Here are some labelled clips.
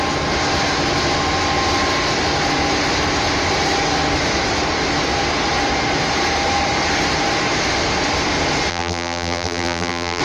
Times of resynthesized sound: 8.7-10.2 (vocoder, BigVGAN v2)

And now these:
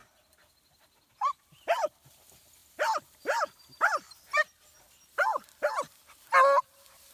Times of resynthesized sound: none

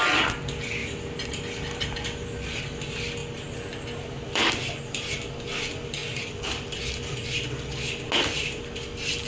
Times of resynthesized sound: 0.8-2.6 (vocoder, BigVGAN v2); 3.2-4.8; 6.0-8.0